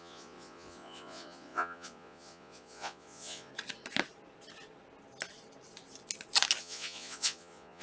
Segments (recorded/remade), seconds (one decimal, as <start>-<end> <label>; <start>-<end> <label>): 0.0-3.5 remade; 3.5-6.6 recorded; 6.6-7.8 remade